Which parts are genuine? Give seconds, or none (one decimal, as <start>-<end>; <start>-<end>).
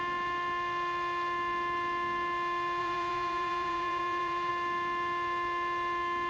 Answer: 0.0-2.8; 4.5-6.3